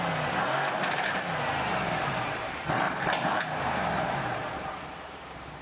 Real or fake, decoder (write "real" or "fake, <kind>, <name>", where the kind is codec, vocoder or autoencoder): fake, vocoder, BigVGAN v2